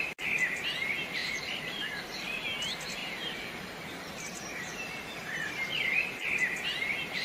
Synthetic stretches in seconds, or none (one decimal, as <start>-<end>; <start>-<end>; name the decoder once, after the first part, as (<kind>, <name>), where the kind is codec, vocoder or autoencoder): 1.2-2.0 (vocoder, BigVGAN v2); 3.0-3.6